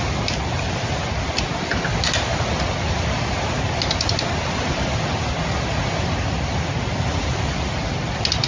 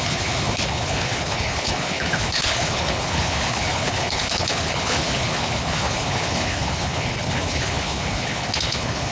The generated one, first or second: second